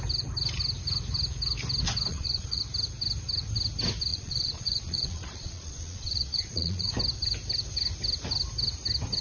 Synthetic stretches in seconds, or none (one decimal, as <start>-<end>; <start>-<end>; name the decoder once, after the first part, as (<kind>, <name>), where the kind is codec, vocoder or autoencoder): 2.1-2.6 (vocoder, Vocos); 4.1-6.9